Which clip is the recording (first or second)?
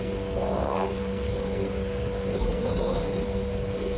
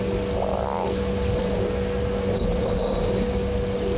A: second